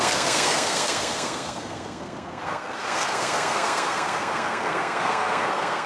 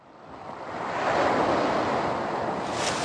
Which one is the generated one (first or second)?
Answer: first